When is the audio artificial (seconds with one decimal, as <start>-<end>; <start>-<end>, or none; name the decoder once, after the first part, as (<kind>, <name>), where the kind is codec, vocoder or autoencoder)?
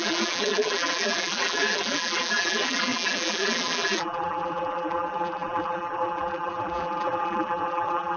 0.0-8.2 (vocoder, BigVGAN v2)